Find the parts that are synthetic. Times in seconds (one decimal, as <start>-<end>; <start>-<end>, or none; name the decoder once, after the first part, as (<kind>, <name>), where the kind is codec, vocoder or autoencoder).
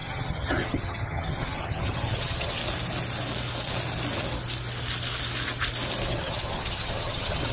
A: 0.0-2.6 (vocoder, HiFi-GAN); 6.1-7.5